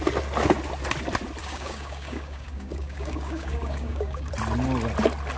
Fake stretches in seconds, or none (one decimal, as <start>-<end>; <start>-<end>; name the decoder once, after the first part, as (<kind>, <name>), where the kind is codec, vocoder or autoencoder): 1.4-4.3 (codec, DAC)